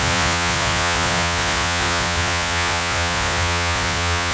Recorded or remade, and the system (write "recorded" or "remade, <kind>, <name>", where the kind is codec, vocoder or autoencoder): remade, vocoder, Vocos